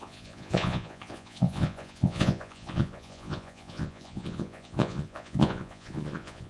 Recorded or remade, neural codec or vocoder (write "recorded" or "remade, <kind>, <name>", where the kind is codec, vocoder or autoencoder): remade, vocoder, Vocos